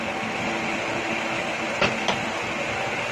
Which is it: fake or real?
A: real